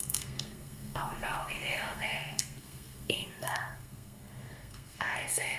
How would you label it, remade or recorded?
remade